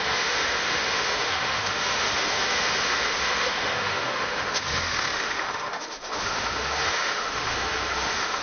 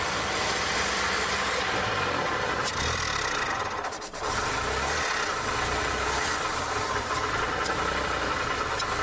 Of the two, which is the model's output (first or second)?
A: first